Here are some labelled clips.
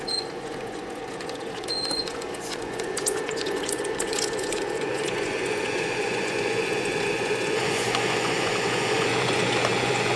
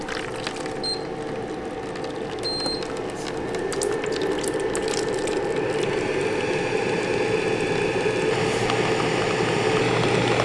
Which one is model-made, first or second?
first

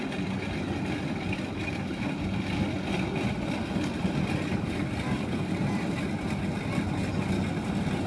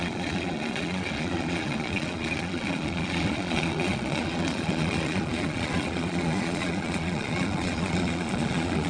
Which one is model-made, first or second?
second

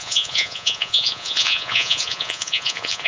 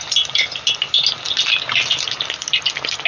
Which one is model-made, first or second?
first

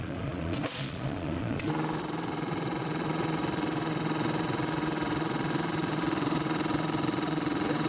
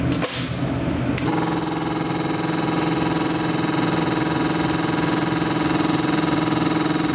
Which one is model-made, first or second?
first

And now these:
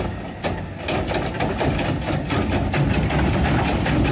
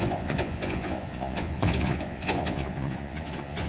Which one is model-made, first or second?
second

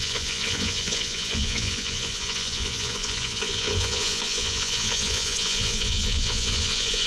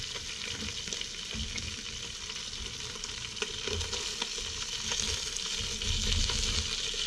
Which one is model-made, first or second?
first